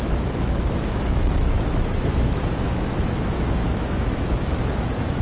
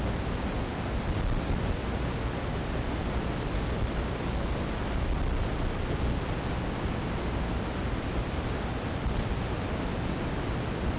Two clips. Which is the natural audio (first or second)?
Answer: second